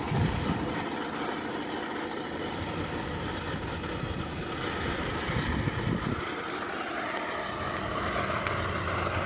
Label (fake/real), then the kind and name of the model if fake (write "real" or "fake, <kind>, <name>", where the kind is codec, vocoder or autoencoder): real